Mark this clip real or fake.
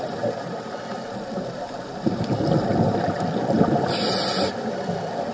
real